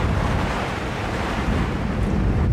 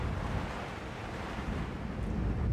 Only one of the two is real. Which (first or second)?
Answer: second